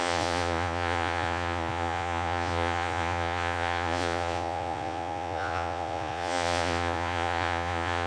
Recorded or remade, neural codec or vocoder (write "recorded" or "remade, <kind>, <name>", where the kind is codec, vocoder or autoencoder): remade, vocoder, Vocos